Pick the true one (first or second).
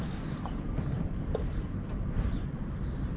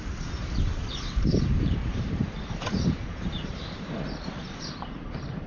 first